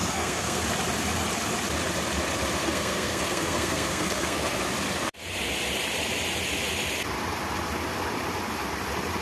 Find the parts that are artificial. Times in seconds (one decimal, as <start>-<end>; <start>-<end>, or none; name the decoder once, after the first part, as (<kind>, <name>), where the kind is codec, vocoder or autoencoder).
0.0-0.6 (codec, SNAC); 2.6-4.6